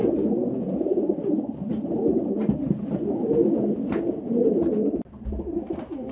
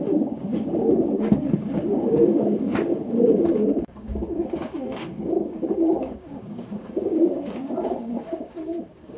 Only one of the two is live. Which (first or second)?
first